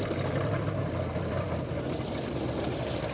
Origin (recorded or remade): remade